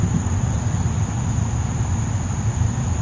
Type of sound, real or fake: real